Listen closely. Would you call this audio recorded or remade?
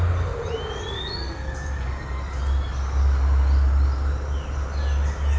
recorded